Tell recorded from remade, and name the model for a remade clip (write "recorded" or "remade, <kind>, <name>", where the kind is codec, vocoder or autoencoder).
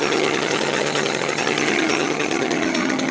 remade, vocoder, HiFi-GAN